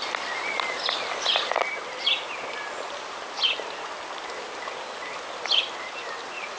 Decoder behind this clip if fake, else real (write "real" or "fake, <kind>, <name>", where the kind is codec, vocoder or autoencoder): real